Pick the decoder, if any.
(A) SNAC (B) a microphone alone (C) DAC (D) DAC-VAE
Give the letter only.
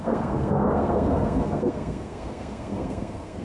A